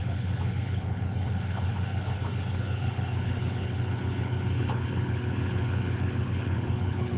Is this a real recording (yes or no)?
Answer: no